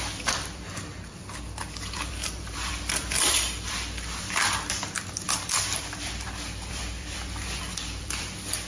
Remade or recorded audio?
remade